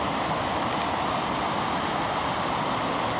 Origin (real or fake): real